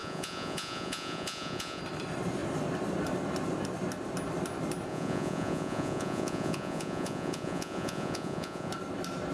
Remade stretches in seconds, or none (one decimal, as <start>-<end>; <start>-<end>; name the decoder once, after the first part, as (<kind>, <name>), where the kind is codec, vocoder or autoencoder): 0.0-1.8 (vocoder, Vocos); 4.9-8.7